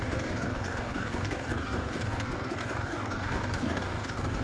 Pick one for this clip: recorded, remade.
remade